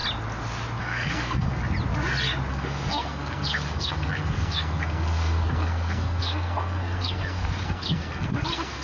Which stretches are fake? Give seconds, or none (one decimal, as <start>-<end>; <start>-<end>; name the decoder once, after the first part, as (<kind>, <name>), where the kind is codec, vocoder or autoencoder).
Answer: 0.8-1.6 (codec, SNAC); 2.5-8.8